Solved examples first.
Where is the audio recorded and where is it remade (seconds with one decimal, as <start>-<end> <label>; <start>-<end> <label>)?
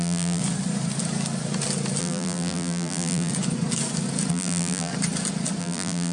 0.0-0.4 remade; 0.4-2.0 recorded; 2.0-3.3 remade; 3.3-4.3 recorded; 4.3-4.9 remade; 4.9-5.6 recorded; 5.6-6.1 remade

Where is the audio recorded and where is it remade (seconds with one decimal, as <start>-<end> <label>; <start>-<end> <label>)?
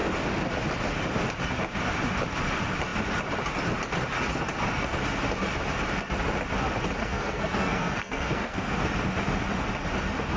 0.0-7.0 recorded; 7.0-8.8 remade; 8.8-10.4 recorded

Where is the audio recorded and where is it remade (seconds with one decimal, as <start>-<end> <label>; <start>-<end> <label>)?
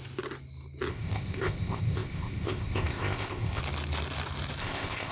0.0-0.9 recorded; 0.9-3.6 remade; 3.6-4.6 recorded; 4.6-5.1 remade